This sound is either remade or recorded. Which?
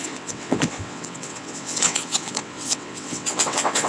remade